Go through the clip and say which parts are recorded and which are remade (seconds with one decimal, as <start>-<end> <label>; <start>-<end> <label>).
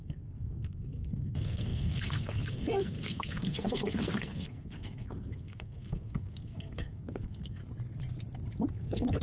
0.0-7.6 remade; 7.6-8.7 recorded; 8.7-9.2 remade